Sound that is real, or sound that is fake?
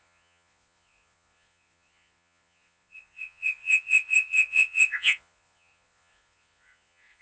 fake